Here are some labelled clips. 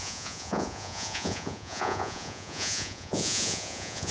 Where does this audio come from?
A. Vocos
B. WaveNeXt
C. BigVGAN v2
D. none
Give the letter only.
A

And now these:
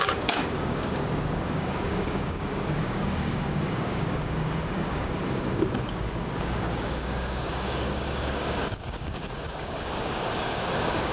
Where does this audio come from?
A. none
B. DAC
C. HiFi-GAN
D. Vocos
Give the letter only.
B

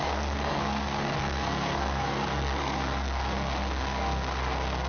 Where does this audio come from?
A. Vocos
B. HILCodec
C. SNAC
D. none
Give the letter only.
C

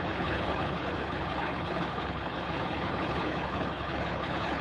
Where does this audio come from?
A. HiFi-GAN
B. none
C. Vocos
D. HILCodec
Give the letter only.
D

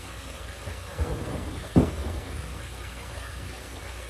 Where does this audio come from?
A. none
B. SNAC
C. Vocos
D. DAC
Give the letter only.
B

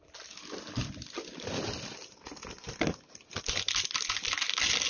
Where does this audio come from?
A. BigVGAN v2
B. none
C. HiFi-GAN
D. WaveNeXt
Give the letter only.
B